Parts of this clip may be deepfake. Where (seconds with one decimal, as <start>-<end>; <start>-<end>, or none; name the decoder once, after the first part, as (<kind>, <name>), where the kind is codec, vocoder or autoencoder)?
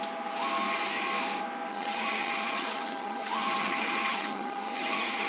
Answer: 1.7-5.3 (vocoder, HiFi-GAN)